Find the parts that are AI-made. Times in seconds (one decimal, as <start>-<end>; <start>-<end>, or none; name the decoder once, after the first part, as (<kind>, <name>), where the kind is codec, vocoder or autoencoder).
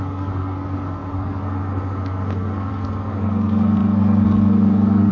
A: 0.0-5.1 (codec, SNAC)